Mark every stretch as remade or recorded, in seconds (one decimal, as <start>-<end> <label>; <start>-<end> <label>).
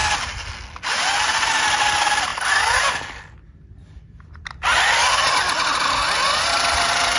0.0-7.2 recorded